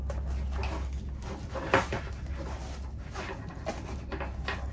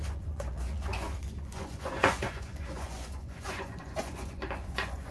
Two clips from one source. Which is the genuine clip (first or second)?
first